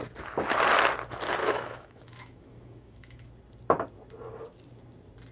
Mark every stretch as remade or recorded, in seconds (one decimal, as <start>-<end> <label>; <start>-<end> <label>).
0.0-1.4 recorded; 1.4-3.3 remade; 3.3-5.3 recorded